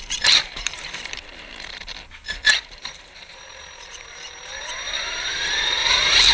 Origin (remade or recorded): remade